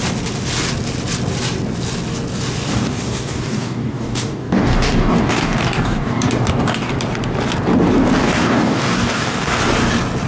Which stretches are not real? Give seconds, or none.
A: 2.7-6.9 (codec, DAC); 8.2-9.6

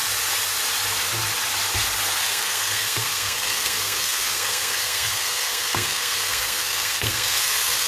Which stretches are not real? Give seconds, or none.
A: 2.2-7.9 (codec, SNAC)

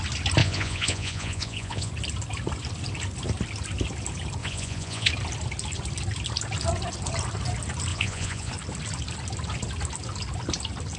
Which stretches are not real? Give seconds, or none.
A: 0.4-1.9 (vocoder, Vocos); 4.4-5.1; 7.9-8.5

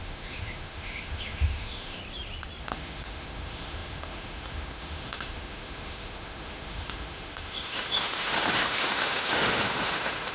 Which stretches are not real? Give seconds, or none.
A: 0.0-2.0 (autoencoder, DAC-VAE); 2.6-10.3

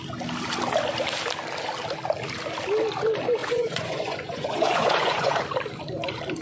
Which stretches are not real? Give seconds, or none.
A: 3.4-5.4 (vocoder, Vocos)

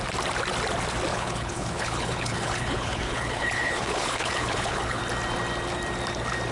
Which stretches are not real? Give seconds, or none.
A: 1.1-5.0 (codec, HILCodec)

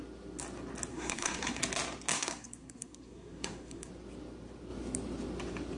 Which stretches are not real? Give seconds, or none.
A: 0.9-1.6 (codec, SNAC); 2.1-3.9